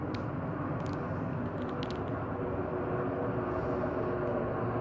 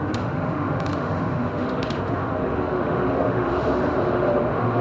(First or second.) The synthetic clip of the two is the second